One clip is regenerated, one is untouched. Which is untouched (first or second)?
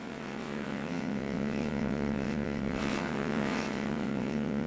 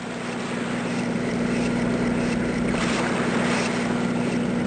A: second